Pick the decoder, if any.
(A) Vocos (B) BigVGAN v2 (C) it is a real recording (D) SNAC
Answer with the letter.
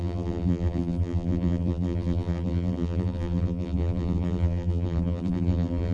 B